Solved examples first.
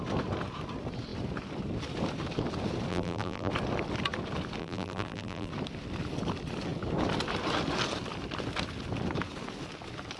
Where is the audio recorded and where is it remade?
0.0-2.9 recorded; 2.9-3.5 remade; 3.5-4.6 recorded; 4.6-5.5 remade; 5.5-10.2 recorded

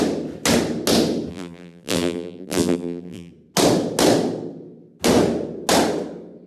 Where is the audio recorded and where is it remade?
0.0-1.3 recorded; 1.3-3.3 remade; 3.3-6.5 recorded

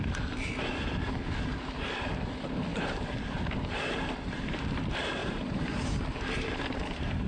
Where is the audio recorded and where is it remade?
0.0-2.7 recorded; 2.7-4.0 remade; 4.0-5.2 recorded; 5.2-6.0 remade; 6.0-7.3 recorded

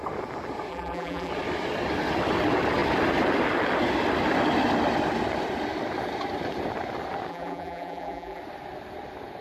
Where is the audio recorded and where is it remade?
0.0-0.7 recorded; 0.7-1.3 remade; 1.3-7.3 recorded; 7.3-8.4 remade; 8.4-9.4 recorded